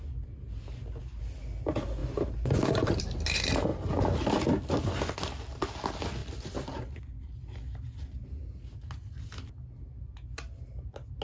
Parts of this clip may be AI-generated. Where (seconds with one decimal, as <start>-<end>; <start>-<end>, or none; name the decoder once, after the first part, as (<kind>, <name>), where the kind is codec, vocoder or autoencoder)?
2.0-3.0 (vocoder, BigVGAN v2)